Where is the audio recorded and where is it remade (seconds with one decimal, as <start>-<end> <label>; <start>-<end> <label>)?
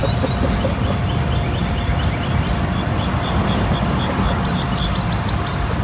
0.0-5.8 recorded